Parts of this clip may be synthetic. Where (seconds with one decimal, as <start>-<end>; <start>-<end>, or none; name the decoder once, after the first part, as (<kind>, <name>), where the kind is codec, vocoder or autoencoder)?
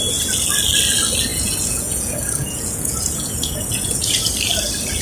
1.3-4.3 (vocoder, Vocos)